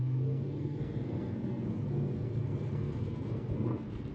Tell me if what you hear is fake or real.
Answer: fake